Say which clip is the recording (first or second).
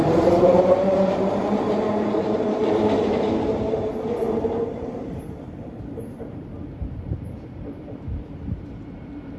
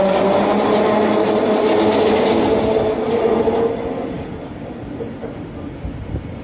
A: second